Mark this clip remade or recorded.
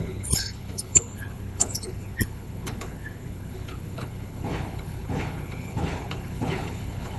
remade